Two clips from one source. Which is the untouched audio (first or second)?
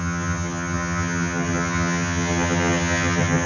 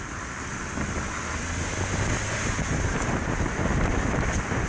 second